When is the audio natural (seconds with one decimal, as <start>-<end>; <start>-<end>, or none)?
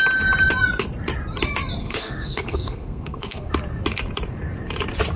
0.0-1.8; 3.5-5.2